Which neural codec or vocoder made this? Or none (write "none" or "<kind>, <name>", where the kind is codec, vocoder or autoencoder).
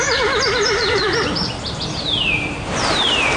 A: vocoder, BigVGAN v2